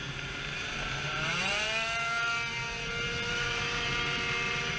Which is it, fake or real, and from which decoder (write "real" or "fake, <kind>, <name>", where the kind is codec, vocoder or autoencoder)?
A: fake, vocoder, BigVGAN v2